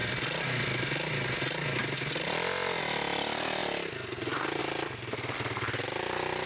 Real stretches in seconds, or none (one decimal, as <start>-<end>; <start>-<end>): 0.0-6.5